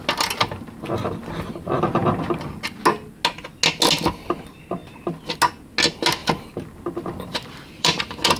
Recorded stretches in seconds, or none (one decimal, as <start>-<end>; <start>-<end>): 0.0-2.0; 2.7-6.2; 8.0-8.4